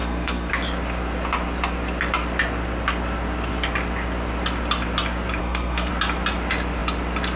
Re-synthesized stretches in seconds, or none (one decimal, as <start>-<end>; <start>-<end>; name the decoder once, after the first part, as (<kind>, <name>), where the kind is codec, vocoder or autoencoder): 0.0-0.5 (codec, SNAC); 5.4-5.9